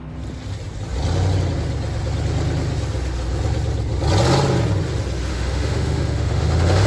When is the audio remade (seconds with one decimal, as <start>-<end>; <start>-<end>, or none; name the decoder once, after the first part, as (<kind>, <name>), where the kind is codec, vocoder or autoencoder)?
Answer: 5.3-6.9 (autoencoder, DAC-VAE)